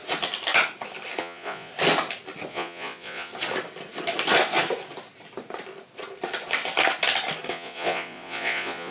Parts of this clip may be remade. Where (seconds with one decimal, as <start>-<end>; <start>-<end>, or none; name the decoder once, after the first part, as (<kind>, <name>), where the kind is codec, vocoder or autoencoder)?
1.2-1.7 (vocoder, Vocos); 2.5-3.3; 7.5-8.9